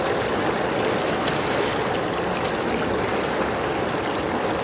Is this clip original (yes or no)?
yes